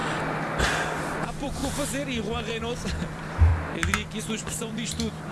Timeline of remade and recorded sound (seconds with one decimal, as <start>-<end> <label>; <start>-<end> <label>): 0.0-0.6 recorded; 0.6-1.6 remade; 1.6-2.8 recorded; 2.8-3.5 remade; 3.5-4.2 recorded; 4.2-5.3 remade